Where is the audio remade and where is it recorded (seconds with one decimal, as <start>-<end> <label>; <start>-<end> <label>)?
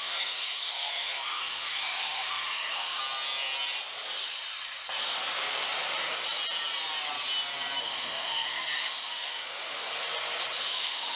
0.0-3.0 remade; 3.0-7.8 recorded; 7.8-9.9 remade; 9.9-10.6 recorded; 10.6-11.2 remade